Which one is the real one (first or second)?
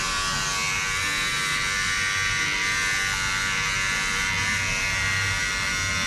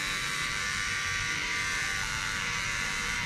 first